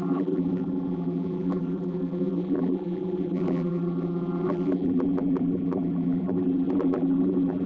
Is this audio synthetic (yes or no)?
yes